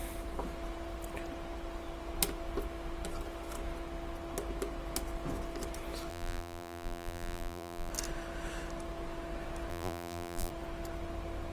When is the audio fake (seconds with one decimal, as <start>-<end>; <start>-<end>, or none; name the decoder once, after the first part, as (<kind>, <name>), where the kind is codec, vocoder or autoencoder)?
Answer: 6.1-7.9 (vocoder, BigVGAN v2); 9.7-10.5